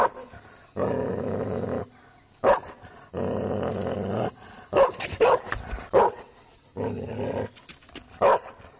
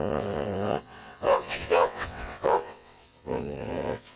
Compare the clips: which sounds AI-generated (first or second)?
second